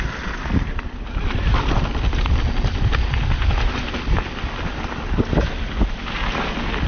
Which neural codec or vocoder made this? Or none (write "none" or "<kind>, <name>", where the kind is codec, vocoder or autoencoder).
none